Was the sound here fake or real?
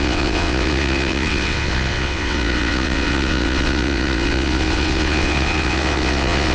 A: fake